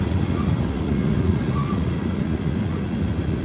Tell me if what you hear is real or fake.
fake